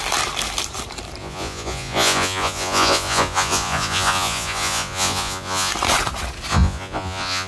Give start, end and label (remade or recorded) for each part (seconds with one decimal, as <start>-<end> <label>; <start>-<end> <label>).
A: 0.0-1.2 recorded; 1.2-5.7 remade; 5.7-6.5 recorded; 6.5-7.5 remade